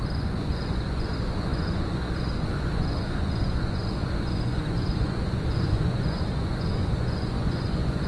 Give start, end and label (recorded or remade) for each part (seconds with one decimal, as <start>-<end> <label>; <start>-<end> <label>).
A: 0.0-8.1 remade